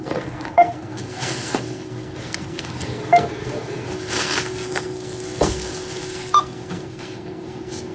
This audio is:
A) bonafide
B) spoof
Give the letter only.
B